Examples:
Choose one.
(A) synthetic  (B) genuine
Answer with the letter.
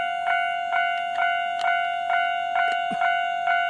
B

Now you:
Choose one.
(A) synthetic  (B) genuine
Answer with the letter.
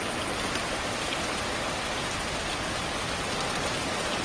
B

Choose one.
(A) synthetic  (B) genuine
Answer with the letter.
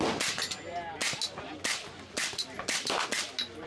B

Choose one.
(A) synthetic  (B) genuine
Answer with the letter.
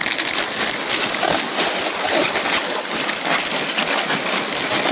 B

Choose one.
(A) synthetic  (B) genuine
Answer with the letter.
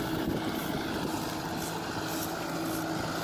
B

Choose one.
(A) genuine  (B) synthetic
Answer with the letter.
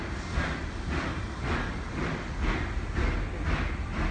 A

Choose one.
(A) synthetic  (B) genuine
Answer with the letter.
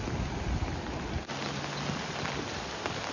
B